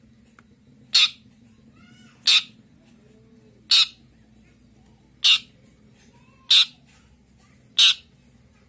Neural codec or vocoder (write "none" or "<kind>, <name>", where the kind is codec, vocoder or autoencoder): none